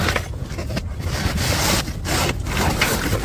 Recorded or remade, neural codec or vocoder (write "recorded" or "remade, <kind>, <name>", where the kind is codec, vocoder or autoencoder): recorded